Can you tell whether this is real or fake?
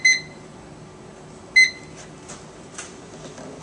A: real